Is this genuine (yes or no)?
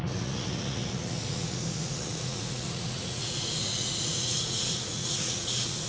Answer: no